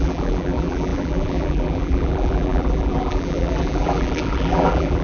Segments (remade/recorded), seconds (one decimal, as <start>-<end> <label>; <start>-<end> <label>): 0.0-5.0 remade